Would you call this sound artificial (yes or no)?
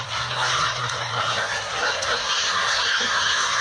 yes